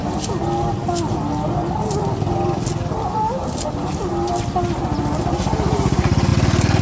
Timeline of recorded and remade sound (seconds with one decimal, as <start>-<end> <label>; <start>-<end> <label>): 0.0-6.8 recorded